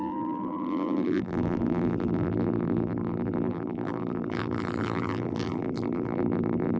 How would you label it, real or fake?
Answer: fake